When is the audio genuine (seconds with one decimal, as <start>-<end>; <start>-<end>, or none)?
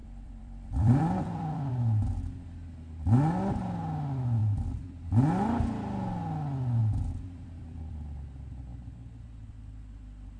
1.7-4.4; 5.0-6.8; 7.9-10.4